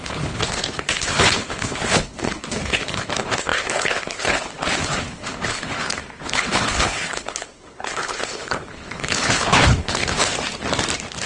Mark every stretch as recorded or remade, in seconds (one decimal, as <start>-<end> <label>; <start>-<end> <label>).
0.0-10.3 remade; 10.3-11.3 recorded